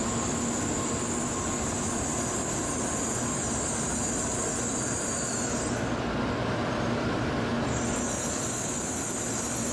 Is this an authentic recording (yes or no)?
yes